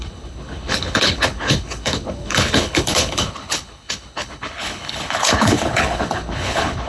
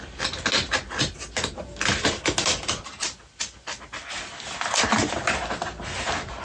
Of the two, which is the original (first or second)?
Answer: second